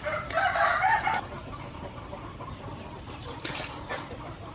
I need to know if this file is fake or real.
fake